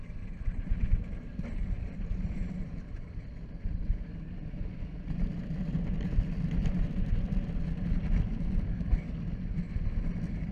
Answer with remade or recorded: recorded